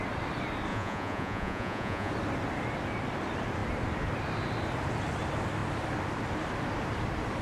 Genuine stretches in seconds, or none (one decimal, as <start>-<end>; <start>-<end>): 0.0-0.7; 2.1-7.4